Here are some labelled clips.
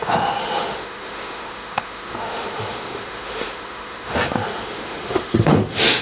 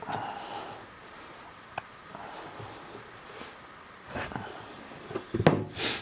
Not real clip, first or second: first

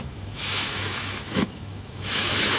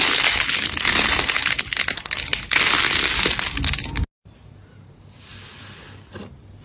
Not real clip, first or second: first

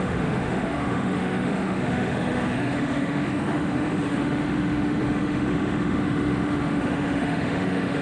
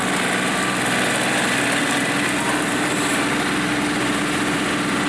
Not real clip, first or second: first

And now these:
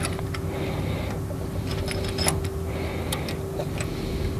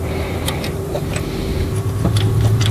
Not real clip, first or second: second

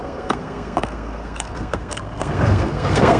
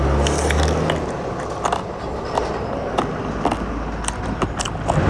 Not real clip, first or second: first